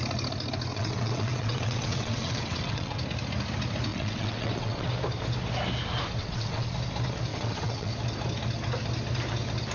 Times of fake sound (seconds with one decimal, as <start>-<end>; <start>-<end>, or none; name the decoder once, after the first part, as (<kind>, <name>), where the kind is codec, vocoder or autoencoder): 0.7-3.0 (vocoder, WaveNeXt); 3.9-4.9; 6.2-6.7; 7.3-7.9